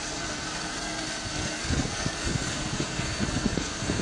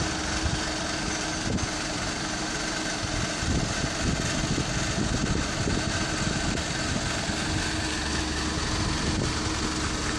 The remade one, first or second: first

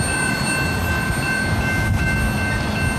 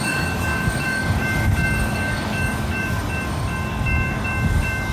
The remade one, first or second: second